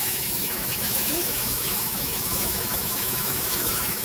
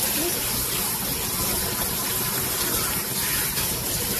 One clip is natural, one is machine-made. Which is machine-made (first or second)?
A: first